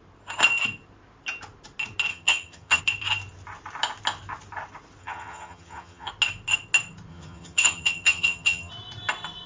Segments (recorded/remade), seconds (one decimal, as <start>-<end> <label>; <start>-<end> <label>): 0.0-2.1 recorded; 2.1-2.8 remade; 2.8-5.0 recorded; 5.0-6.1 remade; 6.1-7.1 recorded; 7.1-8.7 remade; 8.7-9.5 recorded